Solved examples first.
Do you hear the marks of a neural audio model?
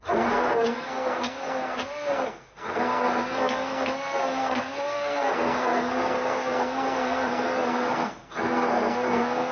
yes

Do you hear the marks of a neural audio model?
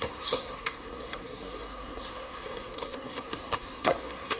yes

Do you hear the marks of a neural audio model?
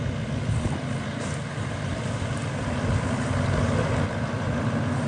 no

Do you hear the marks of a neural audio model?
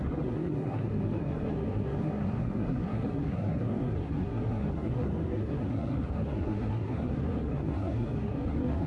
yes